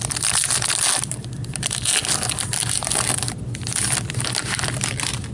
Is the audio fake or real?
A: real